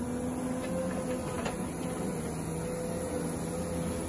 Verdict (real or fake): real